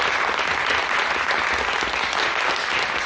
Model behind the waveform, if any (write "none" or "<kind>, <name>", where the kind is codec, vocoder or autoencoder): none